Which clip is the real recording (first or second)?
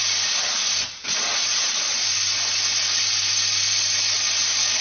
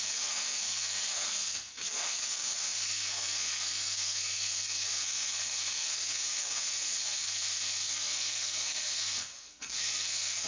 first